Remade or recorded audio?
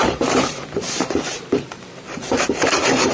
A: remade